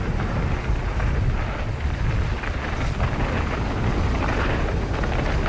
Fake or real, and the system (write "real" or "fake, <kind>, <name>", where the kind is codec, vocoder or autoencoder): real